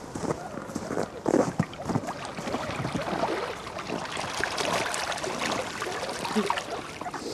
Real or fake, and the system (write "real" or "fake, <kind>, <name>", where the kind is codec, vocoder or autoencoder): real